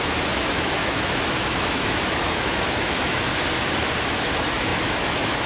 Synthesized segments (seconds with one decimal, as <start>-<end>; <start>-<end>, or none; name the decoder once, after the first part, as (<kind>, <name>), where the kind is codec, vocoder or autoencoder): 0.0-3.3 (autoencoder, DAC-VAE); 4.0-5.5